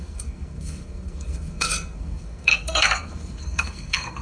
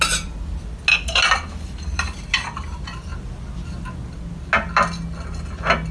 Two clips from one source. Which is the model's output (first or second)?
first